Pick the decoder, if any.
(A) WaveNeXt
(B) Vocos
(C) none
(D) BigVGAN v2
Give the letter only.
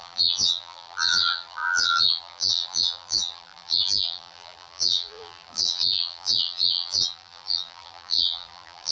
D